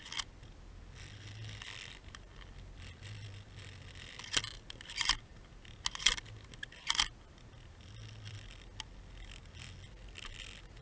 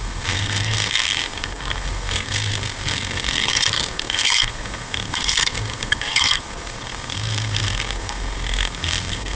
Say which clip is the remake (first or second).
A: second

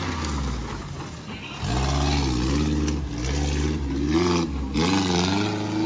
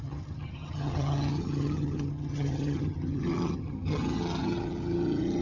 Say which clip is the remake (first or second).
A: second